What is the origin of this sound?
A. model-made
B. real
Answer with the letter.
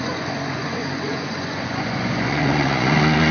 A